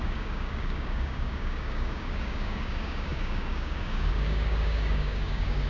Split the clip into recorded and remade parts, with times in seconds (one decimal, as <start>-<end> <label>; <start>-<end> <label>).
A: 0.0-5.7 remade